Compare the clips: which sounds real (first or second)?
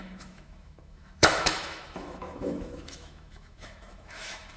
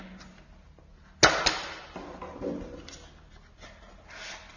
second